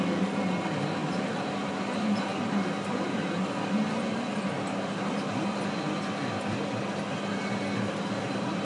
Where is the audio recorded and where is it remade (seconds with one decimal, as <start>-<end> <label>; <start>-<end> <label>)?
0.0-1.0 recorded; 1.0-1.7 remade; 1.7-8.6 recorded